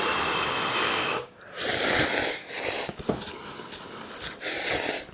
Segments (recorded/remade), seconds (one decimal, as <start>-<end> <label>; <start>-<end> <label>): 0.0-0.8 recorded; 0.8-1.4 remade; 1.4-5.1 recorded